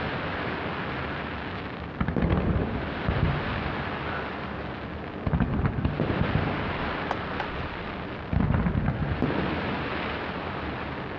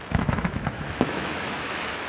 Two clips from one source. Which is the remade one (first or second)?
second